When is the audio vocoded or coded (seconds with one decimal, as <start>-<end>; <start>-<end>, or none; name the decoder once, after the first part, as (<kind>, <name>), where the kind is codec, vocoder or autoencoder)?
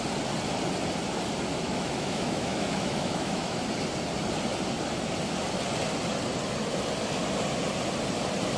1.5-3.6 (autoencoder, DAC-VAE)